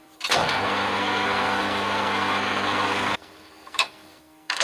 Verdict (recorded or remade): remade